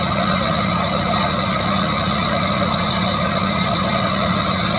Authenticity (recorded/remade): remade